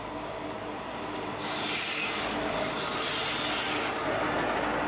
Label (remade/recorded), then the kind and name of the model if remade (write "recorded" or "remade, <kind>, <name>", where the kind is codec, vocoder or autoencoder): recorded